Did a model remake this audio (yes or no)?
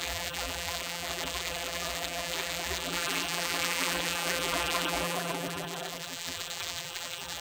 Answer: yes